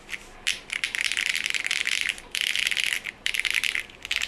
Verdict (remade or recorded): recorded